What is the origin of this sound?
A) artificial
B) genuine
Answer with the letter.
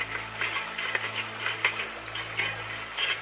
B